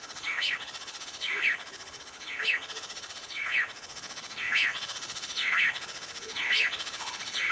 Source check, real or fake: fake